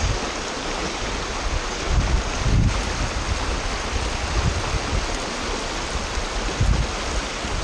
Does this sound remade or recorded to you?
recorded